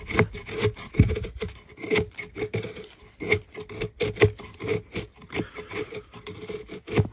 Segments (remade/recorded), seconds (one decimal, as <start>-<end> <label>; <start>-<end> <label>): 0.0-7.1 recorded